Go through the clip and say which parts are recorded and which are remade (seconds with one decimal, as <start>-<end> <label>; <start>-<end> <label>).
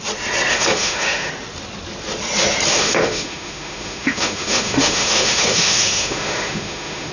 0.0-0.5 recorded; 0.5-1.3 remade; 1.3-2.7 recorded; 2.7-7.1 remade